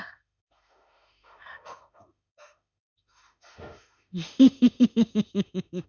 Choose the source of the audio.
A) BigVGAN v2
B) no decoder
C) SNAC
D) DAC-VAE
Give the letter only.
D